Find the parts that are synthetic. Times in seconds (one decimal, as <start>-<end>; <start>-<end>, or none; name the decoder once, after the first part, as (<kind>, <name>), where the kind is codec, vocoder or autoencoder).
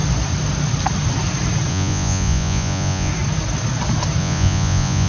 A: 1.7-3.1 (vocoder, Vocos); 4.2-5.1